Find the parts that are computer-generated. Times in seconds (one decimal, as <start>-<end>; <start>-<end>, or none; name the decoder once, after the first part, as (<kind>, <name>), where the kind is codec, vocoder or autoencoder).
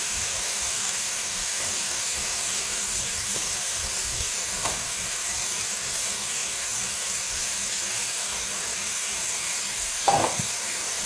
0.0-11.1 (codec, DAC)